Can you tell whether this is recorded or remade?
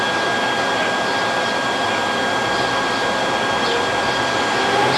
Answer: recorded